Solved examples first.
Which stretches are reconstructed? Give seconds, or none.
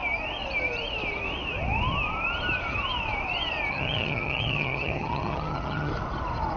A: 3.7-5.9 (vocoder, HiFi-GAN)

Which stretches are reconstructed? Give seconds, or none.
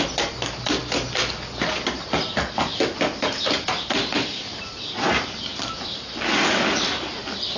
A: none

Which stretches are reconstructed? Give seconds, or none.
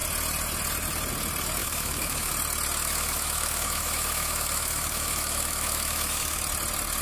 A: 1.6-2.3 (autoencoder, DAC-VAE); 2.8-6.4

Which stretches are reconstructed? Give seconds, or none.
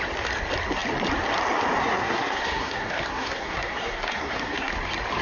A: 1.8-4.7 (codec, SNAC)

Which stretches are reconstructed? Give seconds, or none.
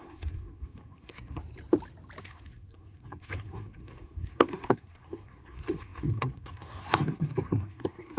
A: 0.0-1.4 (codec, SNAC); 2.2-8.2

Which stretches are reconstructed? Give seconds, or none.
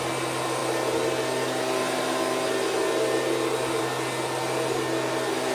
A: none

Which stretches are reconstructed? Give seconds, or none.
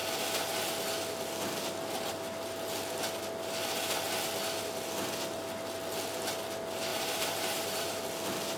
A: 6.9-8.0 (vocoder, BigVGAN v2)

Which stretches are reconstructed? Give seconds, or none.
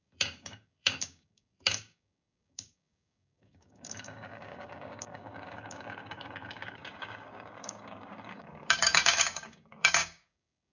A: 0.0-10.7 (codec, DAC)